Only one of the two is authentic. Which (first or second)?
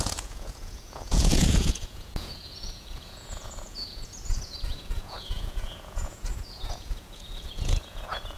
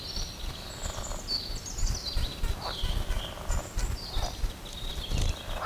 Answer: second